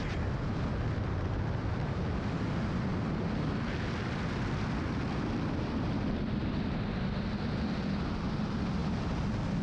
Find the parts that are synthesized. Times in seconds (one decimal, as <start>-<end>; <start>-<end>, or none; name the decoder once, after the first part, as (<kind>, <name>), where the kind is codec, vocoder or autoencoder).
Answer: none